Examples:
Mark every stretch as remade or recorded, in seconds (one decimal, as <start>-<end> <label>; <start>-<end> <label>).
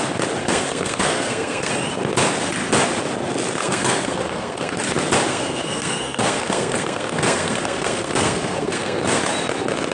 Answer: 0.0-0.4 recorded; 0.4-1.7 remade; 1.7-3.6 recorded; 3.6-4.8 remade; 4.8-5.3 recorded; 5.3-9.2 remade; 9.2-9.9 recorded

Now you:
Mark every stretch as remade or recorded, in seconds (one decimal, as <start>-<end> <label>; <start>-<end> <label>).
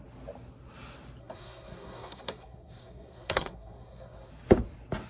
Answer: 0.0-1.2 recorded; 1.2-4.3 remade; 4.3-5.1 recorded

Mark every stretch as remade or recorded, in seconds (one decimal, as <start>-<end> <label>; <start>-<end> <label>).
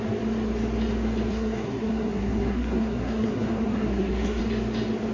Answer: 0.0-1.3 recorded; 1.3-4.4 remade; 4.4-5.1 recorded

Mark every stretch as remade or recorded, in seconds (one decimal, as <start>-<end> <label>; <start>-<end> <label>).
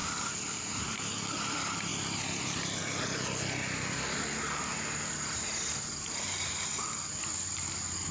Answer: 0.0-8.1 recorded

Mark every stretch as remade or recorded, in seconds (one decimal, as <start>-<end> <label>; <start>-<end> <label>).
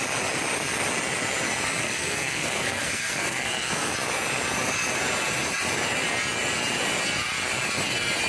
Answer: 0.0-1.8 recorded; 1.8-3.9 remade; 3.9-8.3 recorded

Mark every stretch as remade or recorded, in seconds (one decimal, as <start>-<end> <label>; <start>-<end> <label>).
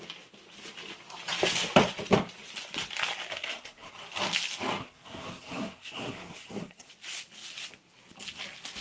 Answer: 0.0-3.3 recorded; 3.3-3.9 remade; 3.9-4.8 recorded; 4.8-6.9 remade; 6.9-8.8 recorded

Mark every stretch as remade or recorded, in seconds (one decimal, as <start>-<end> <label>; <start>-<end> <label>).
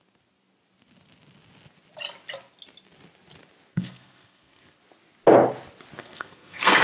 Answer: 0.0-3.7 recorded; 3.7-4.8 remade; 4.8-6.0 recorded; 6.0-6.8 remade